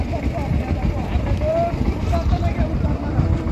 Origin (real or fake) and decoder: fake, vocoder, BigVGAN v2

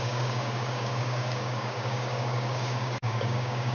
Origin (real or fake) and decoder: fake, codec, DAC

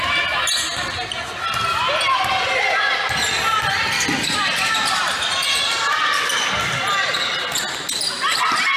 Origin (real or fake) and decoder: real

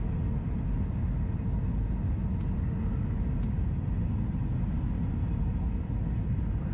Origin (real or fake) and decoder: real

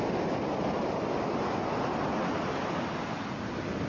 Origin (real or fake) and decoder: real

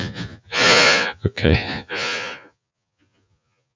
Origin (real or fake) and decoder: fake, vocoder, Vocos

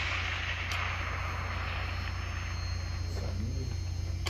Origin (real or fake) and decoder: real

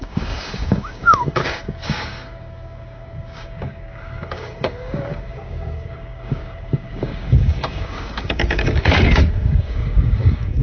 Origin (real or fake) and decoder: fake, codec, DAC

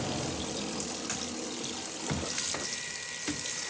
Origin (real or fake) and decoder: real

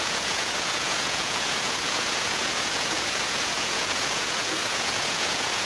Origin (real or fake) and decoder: fake, vocoder, Vocos